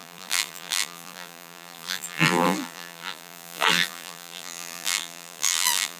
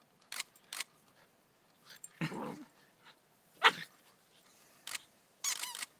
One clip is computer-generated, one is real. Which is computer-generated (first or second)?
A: first